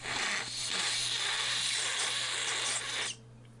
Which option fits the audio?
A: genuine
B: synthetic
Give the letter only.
A